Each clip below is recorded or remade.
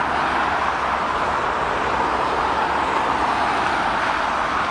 recorded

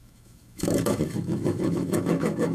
remade